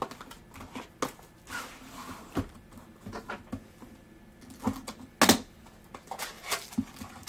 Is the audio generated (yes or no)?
no